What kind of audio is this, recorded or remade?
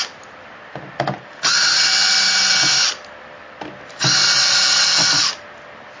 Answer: recorded